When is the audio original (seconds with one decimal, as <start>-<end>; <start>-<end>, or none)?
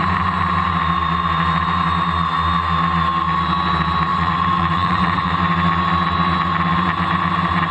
0.0-4.1; 5.3-7.7